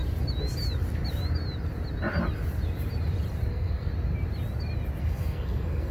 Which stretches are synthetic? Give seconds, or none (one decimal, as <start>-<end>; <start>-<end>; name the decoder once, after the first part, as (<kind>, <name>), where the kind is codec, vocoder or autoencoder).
3.5-3.9 (codec, SNAC); 5.0-5.9